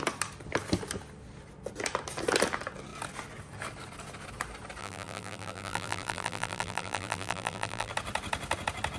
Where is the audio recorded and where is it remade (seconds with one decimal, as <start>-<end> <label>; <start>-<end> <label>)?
0.0-4.8 recorded; 4.8-7.9 remade; 7.9-9.0 recorded